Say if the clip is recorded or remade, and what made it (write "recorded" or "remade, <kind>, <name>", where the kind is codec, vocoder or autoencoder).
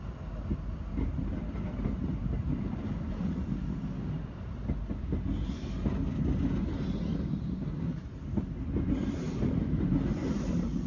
recorded